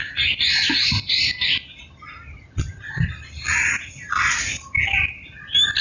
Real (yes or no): yes